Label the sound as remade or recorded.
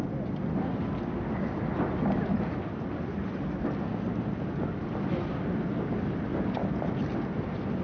recorded